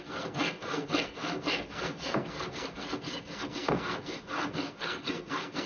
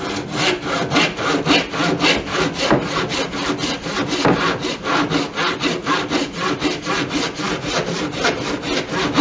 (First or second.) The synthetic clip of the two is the first